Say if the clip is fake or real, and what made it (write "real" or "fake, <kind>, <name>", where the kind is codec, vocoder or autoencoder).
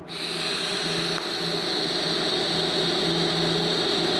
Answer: real